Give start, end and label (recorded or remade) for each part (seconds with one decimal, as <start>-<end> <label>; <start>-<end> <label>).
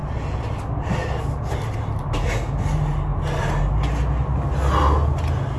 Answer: 0.0-5.6 recorded